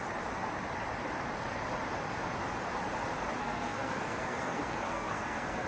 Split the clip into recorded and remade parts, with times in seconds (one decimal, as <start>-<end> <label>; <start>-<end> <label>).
0.0-3.4 recorded; 3.4-5.7 remade